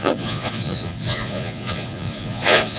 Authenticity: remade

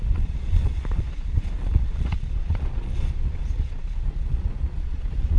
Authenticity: remade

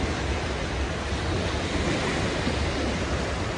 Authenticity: recorded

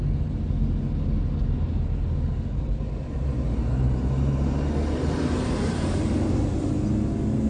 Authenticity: recorded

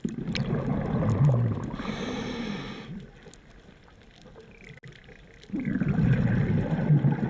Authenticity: recorded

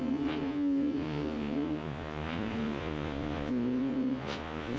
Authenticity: remade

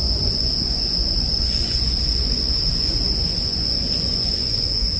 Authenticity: remade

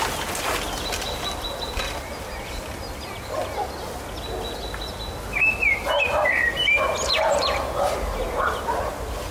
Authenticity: recorded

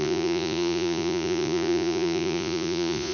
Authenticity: remade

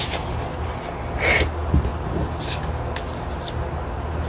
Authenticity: recorded